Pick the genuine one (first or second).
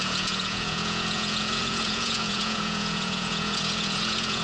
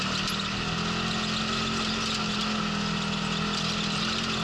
second